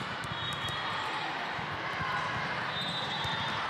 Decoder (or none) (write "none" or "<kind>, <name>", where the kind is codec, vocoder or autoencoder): none